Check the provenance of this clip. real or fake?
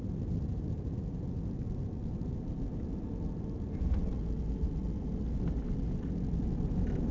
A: real